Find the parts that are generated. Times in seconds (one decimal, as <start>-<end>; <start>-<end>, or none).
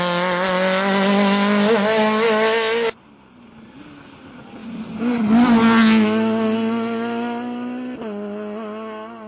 none